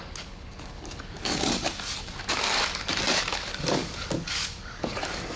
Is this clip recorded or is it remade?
remade